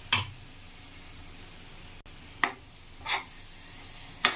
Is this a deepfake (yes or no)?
no